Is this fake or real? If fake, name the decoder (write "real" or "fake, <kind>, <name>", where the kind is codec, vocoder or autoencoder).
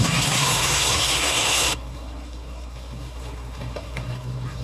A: fake, codec, SNAC